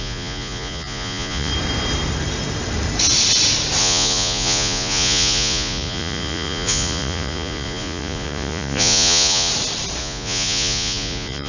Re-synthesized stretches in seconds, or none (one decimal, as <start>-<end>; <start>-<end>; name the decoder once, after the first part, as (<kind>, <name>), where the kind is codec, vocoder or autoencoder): 0.0-1.5 (vocoder, Vocos); 3.8-9.5; 10.0-11.5